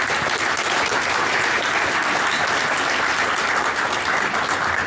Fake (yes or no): no